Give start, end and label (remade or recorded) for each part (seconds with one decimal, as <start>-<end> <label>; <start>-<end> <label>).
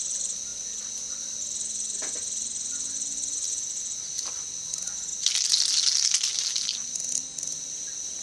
0.0-8.2 recorded